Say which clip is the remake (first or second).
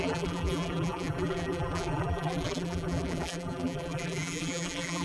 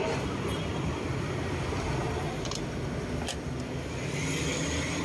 first